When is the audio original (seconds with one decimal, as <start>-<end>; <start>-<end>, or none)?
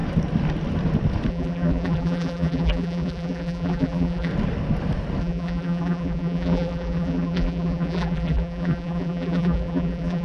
0.0-1.3; 4.3-5.2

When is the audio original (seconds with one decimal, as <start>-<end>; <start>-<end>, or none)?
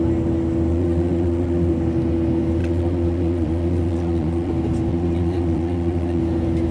0.0-0.7; 1.7-2.6; 4.5-4.9; 6.2-6.7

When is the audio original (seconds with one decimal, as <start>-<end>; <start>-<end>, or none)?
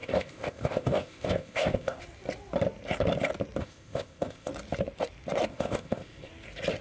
2.0-3.6; 4.5-5.5; 6.3-6.8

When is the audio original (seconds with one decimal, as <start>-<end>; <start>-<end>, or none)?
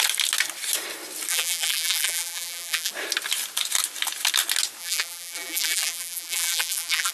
0.0-1.3; 2.9-4.8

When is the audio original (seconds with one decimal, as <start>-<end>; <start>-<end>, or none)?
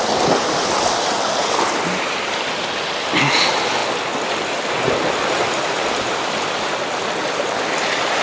0.0-8.2